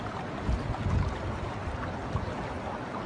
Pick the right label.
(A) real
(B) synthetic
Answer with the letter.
A